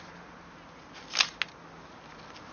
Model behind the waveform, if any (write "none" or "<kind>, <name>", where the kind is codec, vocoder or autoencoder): none